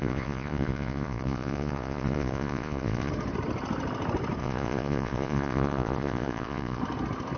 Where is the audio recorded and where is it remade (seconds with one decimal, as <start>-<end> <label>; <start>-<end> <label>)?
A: 0.0-3.1 remade; 3.1-4.4 recorded; 4.4-6.8 remade; 6.8-7.4 recorded